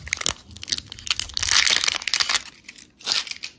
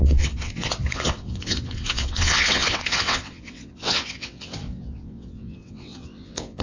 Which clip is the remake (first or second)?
second